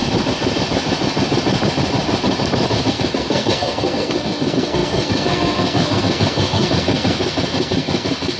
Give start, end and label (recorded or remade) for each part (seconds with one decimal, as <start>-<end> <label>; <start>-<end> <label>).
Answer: 0.0-2.9 recorded; 2.9-8.4 remade